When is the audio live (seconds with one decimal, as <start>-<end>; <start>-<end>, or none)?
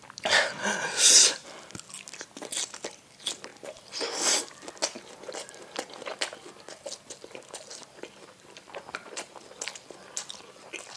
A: 0.0-11.0